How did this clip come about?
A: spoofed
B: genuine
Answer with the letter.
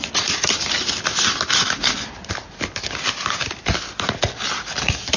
B